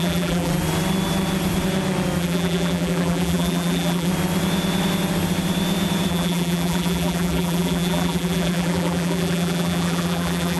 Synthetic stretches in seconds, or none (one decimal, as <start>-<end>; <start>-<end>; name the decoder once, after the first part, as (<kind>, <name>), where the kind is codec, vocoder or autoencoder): 0.0-0.5 (vocoder, BigVGAN v2); 2.2-4.1; 6.1-10.6